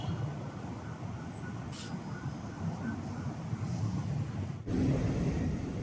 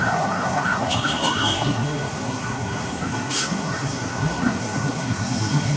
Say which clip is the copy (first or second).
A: second